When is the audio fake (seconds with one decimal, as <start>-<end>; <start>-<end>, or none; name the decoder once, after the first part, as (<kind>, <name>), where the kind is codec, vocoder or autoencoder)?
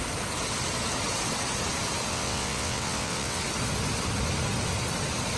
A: 2.1-3.4 (vocoder, WaveNeXt)